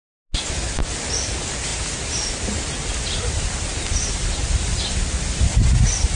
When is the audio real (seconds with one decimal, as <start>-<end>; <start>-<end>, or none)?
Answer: 0.0-6.2